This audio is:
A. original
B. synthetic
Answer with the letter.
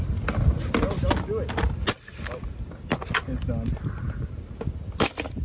A